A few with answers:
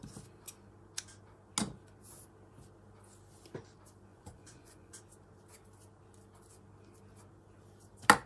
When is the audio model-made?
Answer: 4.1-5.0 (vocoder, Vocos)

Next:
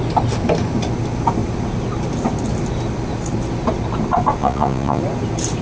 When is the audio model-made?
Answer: 4.4-5.0 (vocoder, Vocos)

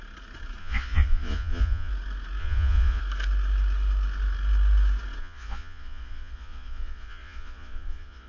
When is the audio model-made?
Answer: 0.6-1.9 (vocoder, Vocos); 2.4-3.0; 5.2-8.3

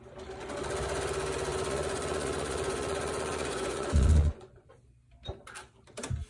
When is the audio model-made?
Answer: 1.5-4.7 (vocoder, Vocos)

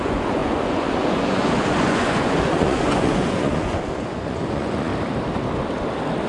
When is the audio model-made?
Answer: 0.0-4.9 (vocoder, Vocos)

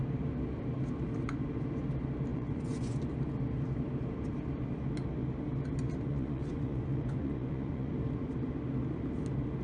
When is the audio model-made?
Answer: 2.3-3.0 (vocoder, Vocos); 6.1-7.9

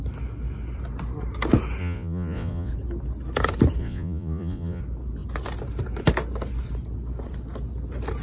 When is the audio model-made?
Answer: 1.8-2.7 (vocoder, Vocos); 3.8-4.8